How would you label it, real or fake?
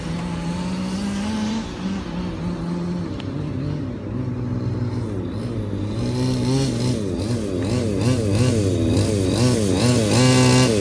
real